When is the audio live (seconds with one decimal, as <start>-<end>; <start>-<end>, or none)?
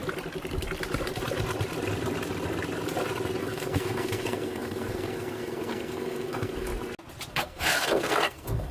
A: 0.0-3.4; 6.7-7.3